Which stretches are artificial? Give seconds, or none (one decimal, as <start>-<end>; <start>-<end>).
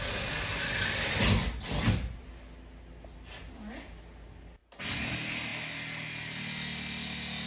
1.4-2.2